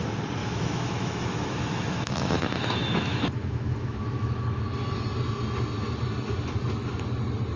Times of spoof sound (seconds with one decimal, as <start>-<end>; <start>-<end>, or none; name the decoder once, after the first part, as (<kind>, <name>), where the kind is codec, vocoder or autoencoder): 0.4-4.6 (autoencoder, DAC-VAE)